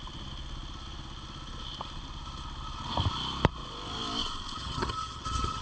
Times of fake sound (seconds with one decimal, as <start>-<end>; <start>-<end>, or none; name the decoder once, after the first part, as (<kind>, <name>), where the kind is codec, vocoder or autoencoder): 4.6-5.6 (vocoder, HiFi-GAN)